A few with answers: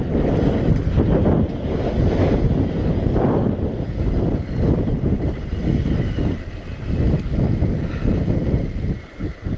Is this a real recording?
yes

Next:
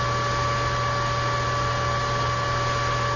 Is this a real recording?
yes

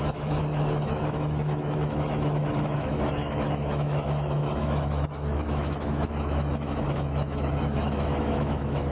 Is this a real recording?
no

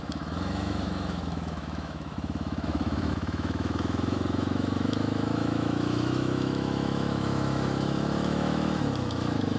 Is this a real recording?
no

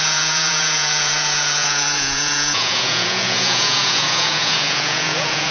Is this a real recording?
no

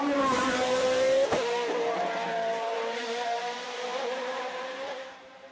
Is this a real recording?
no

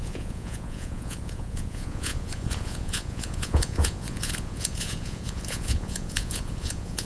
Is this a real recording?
no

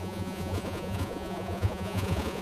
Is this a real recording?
no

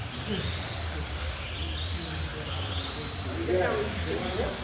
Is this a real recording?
yes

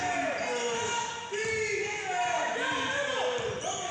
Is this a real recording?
yes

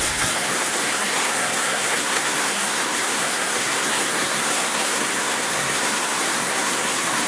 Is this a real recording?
no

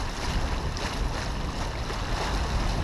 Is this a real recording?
yes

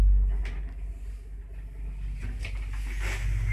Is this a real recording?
yes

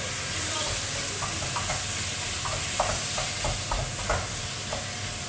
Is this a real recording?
yes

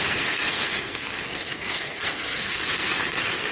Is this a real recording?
no